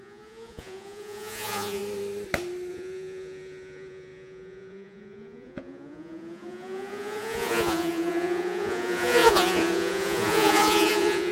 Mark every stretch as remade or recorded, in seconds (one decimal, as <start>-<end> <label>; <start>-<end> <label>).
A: 0.0-1.8 remade; 1.8-2.7 recorded; 2.7-11.3 remade